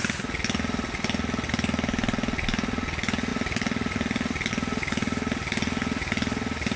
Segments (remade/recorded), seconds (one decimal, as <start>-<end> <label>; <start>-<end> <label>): 0.0-6.8 recorded